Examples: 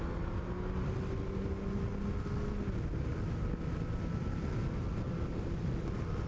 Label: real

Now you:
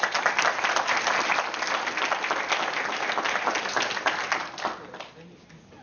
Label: real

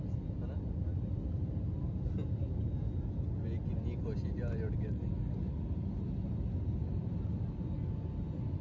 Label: real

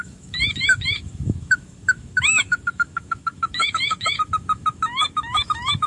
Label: fake